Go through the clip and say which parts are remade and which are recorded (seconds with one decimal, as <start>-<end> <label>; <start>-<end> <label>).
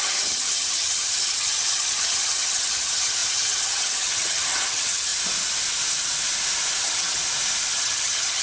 0.0-5.1 remade; 5.1-6.8 recorded; 6.8-7.2 remade; 7.2-7.7 recorded; 7.7-8.4 remade